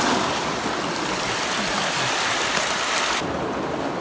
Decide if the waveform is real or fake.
real